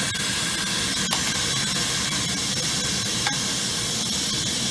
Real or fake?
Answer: real